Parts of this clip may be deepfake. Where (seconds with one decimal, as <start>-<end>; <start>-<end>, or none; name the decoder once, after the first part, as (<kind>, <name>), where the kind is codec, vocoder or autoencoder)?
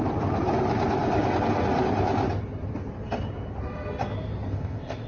4.5-5.1 (codec, ZipCodec)